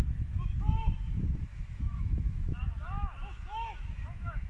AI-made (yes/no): yes